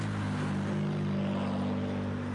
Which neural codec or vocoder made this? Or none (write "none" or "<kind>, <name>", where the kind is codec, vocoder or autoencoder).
none